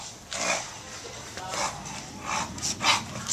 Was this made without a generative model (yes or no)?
yes